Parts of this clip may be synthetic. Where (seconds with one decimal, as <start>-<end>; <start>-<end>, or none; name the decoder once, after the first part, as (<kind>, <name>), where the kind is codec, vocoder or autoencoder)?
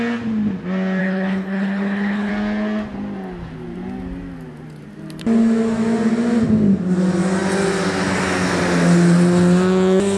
1.0-2.3 (codec, HILCodec)